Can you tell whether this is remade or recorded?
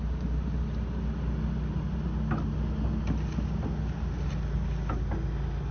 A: recorded